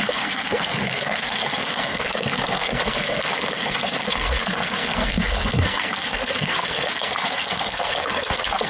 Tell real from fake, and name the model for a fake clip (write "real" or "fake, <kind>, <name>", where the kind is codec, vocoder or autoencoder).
fake, codec, SNAC